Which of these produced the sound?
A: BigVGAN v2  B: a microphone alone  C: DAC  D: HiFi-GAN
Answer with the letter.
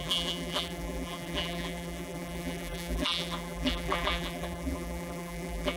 A